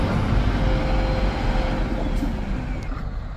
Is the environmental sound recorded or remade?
recorded